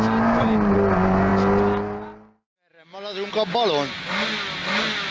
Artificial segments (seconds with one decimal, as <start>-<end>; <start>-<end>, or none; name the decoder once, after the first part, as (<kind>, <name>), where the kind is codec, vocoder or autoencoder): none